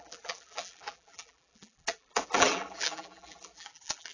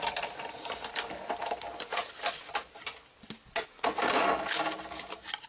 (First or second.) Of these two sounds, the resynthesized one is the first